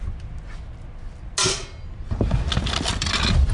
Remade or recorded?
recorded